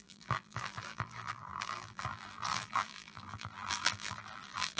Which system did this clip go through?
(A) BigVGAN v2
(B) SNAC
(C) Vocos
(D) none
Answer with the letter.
A